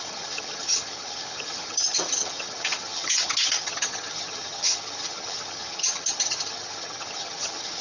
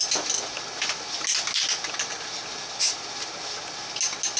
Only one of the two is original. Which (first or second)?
second